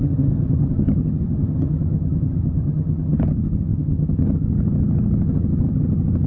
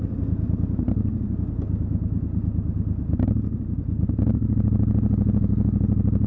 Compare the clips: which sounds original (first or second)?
second